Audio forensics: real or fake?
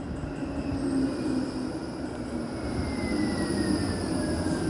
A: real